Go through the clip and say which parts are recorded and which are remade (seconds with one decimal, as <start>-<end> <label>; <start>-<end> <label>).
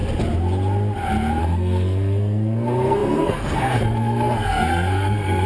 0.0-1.4 recorded; 1.4-5.5 remade